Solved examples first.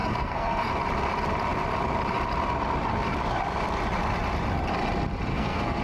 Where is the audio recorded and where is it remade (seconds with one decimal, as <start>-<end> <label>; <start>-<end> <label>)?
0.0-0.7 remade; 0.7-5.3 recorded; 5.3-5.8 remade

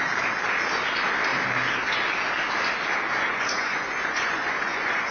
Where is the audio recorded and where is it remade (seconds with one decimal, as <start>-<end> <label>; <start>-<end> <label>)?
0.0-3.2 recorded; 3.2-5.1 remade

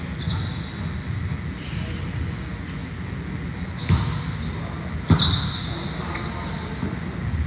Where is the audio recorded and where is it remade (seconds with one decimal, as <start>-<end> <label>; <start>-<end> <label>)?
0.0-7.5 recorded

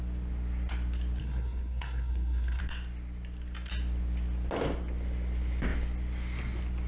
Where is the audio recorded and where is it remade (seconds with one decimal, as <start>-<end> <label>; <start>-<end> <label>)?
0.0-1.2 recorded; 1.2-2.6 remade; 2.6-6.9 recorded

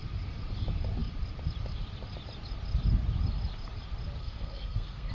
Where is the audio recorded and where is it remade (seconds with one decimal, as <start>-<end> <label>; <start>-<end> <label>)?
0.0-4.2 recorded; 4.2-5.1 remade

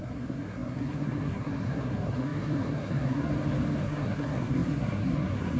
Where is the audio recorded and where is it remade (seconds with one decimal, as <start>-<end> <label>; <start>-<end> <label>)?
0.0-3.3 remade; 3.3-3.8 recorded; 3.8-5.6 remade

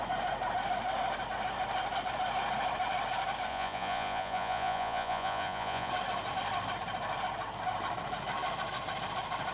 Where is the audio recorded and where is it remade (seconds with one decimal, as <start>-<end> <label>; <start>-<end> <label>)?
0.0-3.5 recorded; 3.5-5.9 remade; 5.9-9.5 recorded